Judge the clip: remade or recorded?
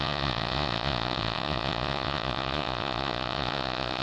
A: remade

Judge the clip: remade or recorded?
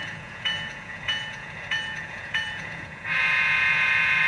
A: remade